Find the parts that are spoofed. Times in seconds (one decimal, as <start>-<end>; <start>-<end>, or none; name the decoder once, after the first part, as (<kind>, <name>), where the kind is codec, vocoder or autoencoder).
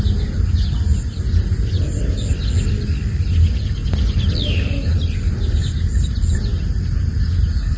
none